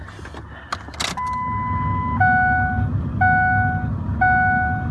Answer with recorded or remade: recorded